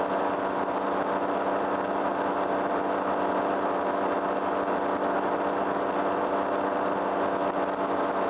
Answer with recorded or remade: recorded